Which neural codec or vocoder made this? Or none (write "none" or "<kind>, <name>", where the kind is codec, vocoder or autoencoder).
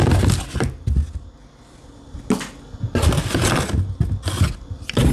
none